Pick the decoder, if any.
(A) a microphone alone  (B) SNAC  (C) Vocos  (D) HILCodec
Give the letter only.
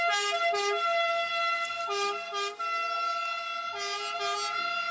A